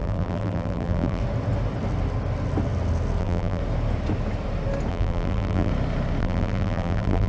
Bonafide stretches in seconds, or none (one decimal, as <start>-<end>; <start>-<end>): 1.2-3.2; 3.6-4.9; 5.7-6.2

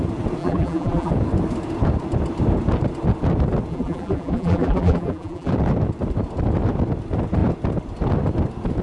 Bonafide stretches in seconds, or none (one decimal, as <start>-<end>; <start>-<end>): 0.0-0.4; 1.1-3.7; 5.5-8.8

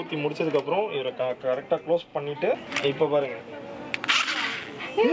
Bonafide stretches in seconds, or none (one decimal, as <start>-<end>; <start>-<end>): 0.0-5.1

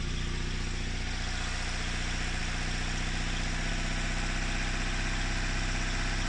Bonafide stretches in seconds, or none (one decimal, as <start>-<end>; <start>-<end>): 0.0-6.3

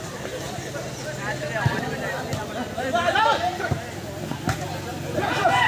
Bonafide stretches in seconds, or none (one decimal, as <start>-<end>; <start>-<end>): 0.0-4.9

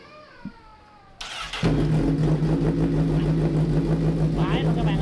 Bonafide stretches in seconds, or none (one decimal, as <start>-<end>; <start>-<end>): 0.0-5.0

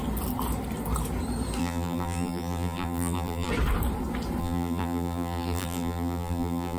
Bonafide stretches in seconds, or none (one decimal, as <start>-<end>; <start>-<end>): 0.0-1.6; 3.5-4.4

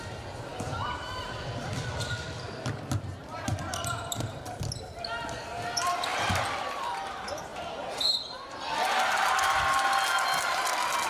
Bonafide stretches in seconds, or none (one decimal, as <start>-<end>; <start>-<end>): 0.0-0.5; 4.7-6.1; 6.9-7.5; 9.4-11.1